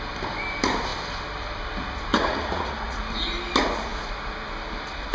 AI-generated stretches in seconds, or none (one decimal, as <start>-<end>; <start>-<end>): 2.1-3.1